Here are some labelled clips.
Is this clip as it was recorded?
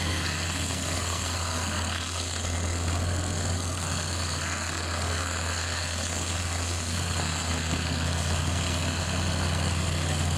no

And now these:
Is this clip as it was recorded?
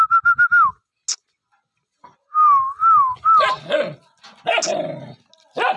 yes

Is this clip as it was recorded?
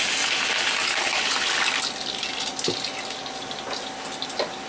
yes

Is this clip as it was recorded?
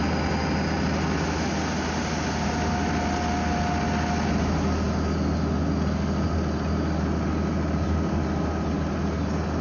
yes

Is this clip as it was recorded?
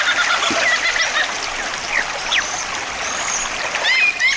yes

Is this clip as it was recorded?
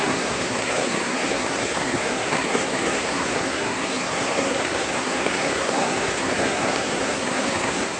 no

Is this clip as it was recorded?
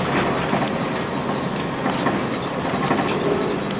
yes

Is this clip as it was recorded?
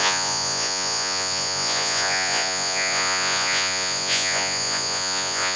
no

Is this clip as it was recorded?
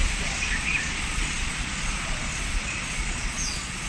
no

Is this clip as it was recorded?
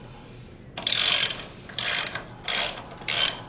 yes